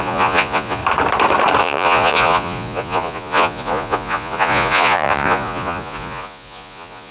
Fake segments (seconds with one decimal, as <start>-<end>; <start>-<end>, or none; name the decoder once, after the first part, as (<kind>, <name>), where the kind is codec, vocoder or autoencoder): 0.0-0.8 (vocoder, Vocos); 1.6-7.1